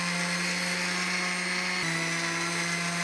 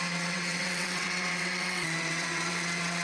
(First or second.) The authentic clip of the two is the first